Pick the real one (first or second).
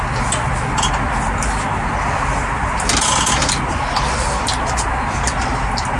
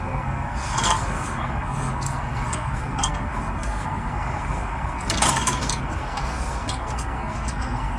first